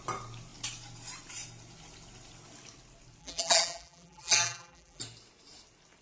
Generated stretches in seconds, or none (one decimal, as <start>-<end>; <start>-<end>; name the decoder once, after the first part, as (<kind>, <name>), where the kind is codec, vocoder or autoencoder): 3.2-5.0 (vocoder, BigVGAN v2)